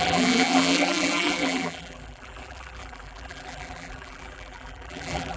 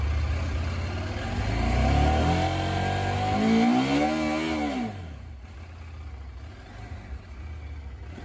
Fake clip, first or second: first